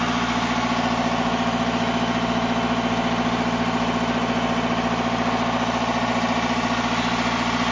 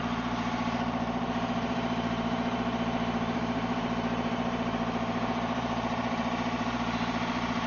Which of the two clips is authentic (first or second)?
first